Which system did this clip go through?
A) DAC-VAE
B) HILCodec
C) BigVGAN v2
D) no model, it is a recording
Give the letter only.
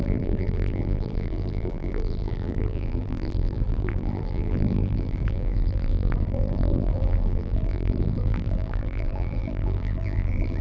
C